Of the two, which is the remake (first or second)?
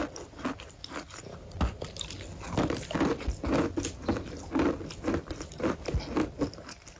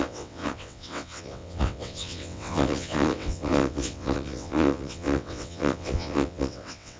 second